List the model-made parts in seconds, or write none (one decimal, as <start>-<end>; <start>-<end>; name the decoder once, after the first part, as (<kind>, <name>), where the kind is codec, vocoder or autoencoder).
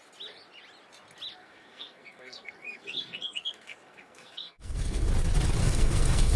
1.4-5.1 (codec, SNAC); 5.6-6.4